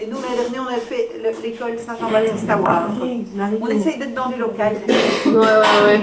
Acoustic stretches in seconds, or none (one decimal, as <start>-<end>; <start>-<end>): 0.0-1.8; 4.3-6.0